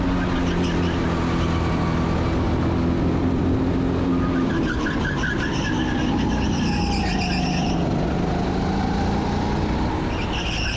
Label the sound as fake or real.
real